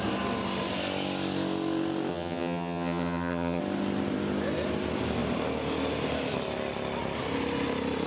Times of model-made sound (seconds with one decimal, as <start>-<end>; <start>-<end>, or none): 2.1-3.6